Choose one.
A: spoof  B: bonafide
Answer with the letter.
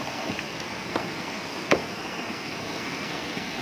A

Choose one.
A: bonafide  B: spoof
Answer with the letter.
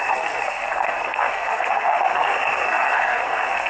B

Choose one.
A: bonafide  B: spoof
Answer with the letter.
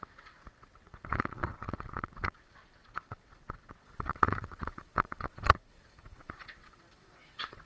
B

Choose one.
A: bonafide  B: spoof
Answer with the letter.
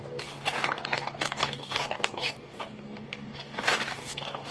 B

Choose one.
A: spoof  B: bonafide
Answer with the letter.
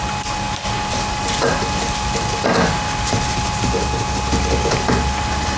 B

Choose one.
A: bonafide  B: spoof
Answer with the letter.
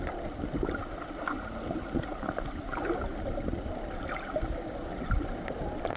A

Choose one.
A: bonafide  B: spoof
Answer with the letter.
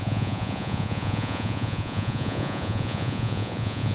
B